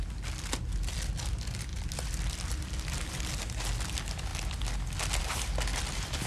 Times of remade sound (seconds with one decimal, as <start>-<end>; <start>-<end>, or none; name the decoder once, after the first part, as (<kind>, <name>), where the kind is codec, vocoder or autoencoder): 1.7-3.2 (vocoder, BigVGAN v2); 5.7-6.3